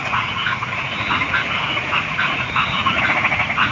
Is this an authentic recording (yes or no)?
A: no